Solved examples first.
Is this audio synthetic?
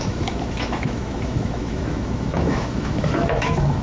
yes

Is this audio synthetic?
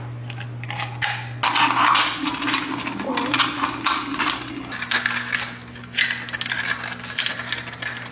no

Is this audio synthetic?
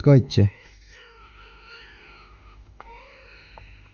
yes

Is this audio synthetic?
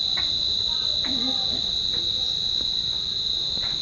no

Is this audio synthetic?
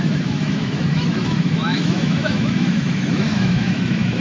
yes